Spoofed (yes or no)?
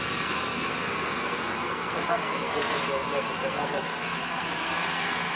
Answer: yes